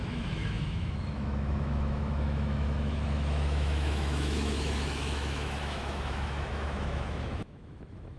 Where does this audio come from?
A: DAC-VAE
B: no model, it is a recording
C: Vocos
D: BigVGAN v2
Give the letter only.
A